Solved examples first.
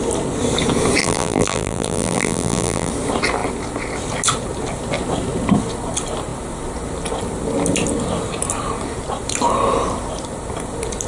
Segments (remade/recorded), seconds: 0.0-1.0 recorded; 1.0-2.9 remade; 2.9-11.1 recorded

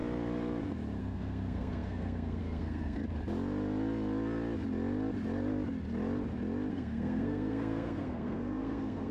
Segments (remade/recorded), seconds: 0.0-1.0 recorded; 1.0-3.0 remade; 3.0-6.7 recorded; 6.7-9.1 remade

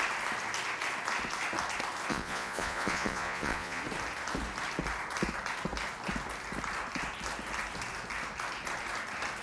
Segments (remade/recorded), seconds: 0.0-2.1 recorded; 2.1-3.8 remade; 3.8-9.4 recorded

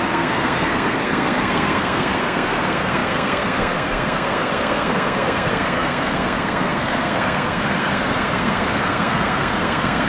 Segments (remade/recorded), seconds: 0.0-10.1 remade

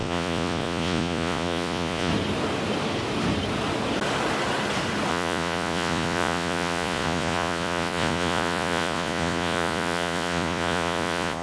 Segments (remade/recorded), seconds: 0.0-2.1 remade; 2.1-5.1 recorded; 5.1-11.4 remade

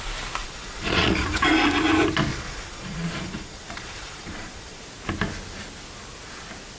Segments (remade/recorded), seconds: 0.0-0.4 recorded; 0.4-1.4 remade; 1.4-2.3 recorded; 2.3-4.8 remade; 4.8-6.8 recorded